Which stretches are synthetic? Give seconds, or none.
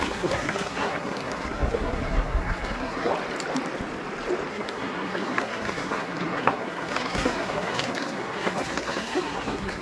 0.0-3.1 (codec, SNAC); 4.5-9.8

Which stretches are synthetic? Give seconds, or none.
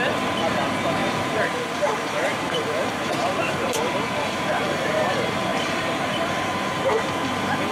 1.0-3.8 (vocoder, BigVGAN v2); 5.5-6.4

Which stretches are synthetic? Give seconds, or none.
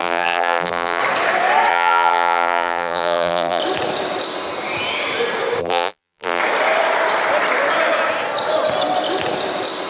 0.0-1.0 (vocoder, BigVGAN v2); 1.7-3.6; 5.6-6.4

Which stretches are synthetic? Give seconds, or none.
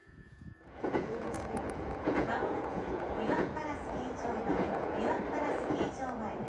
0.0-3.9 (vocoder, Vocos); 4.5-5.2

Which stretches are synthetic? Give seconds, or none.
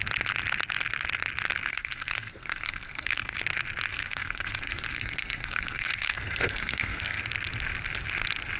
1.7-3.4 (codec, SNAC); 3.9-7.2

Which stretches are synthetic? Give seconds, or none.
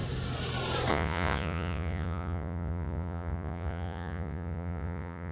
0.9-5.3 (vocoder, Vocos)